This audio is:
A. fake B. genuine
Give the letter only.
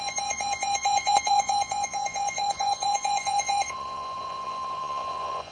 A